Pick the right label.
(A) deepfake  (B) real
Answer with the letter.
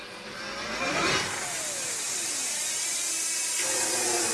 B